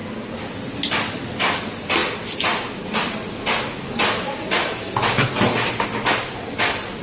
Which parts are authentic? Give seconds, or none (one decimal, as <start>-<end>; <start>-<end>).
0.0-7.0